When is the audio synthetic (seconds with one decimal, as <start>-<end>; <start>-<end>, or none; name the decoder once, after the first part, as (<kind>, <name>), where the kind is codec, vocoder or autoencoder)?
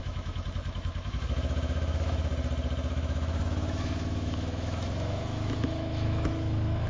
0.0-2.3 (autoencoder, DAC-VAE); 2.9-6.9